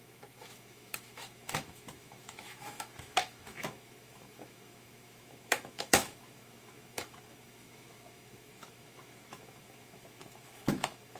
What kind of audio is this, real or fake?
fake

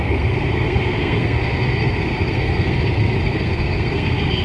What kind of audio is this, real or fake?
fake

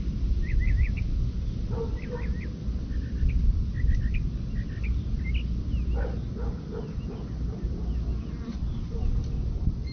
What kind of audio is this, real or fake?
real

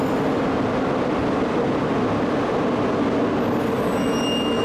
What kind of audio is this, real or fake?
real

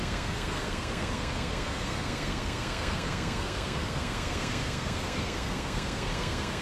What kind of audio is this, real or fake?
fake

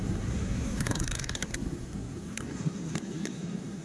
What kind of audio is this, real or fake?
fake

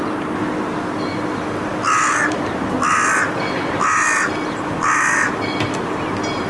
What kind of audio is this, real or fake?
real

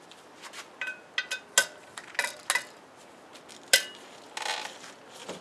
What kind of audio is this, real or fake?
real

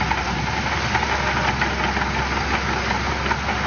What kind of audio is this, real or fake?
real